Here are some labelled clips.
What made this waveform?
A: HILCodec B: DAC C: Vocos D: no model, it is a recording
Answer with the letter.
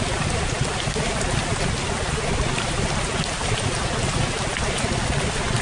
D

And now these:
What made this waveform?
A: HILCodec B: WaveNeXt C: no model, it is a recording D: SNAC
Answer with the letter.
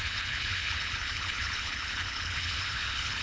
A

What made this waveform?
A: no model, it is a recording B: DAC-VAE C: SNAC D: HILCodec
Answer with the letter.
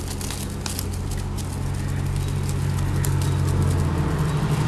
A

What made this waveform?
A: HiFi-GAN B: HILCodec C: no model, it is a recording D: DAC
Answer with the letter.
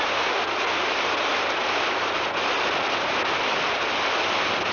C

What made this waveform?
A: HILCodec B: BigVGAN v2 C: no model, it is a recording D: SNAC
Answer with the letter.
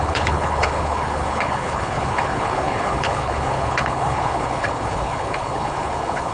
A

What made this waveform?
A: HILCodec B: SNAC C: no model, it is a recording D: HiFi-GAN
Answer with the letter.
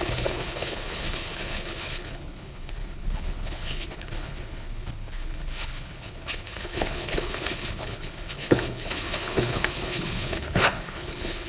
A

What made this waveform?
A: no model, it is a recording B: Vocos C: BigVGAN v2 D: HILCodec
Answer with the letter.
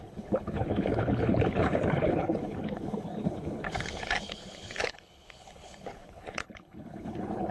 D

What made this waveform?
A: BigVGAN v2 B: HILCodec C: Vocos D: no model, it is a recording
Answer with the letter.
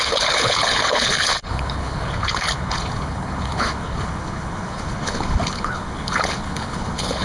B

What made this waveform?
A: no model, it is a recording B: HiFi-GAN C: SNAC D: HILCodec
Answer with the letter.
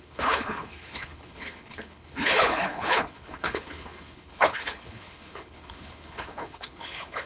D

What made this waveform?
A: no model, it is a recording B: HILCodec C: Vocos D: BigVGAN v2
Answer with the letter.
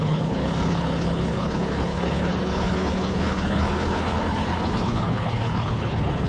B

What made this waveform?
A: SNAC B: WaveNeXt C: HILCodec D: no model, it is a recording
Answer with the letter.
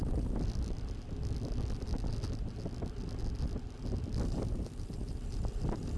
D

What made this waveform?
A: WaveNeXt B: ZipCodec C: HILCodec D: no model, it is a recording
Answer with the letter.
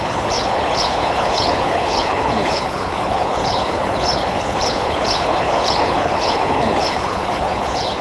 C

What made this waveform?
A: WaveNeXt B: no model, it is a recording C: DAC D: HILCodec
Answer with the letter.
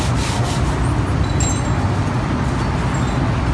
B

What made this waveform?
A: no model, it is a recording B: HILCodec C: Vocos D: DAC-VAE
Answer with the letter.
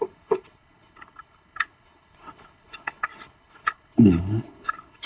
B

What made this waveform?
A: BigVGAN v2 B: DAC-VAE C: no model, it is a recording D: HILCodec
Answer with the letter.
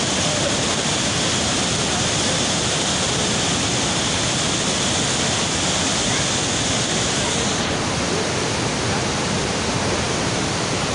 C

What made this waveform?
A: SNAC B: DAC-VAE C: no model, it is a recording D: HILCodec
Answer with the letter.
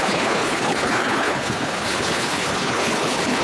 D